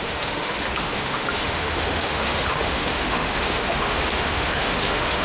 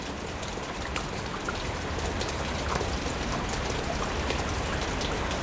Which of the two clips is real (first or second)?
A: second